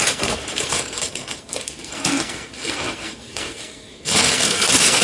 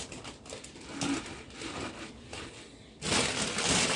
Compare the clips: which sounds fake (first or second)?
first